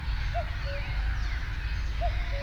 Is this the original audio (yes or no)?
yes